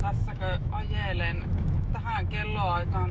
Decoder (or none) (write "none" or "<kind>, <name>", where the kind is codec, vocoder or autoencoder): autoencoder, DAC-VAE